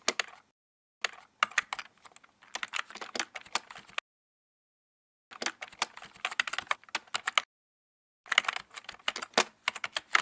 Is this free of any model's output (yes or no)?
yes